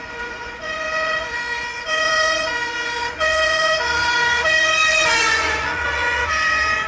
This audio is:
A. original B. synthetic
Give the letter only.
B